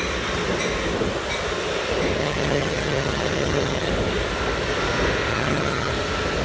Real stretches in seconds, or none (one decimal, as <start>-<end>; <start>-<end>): 0.0-2.2; 3.9-5.3; 5.9-6.4